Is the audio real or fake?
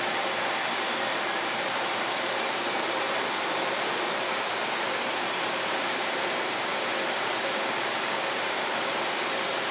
fake